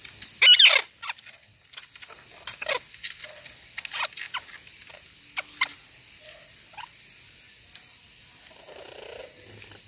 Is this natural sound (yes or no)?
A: yes